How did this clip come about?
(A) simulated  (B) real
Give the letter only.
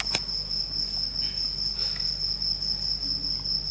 B